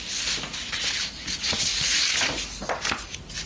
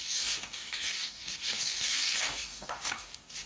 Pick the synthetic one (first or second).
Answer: second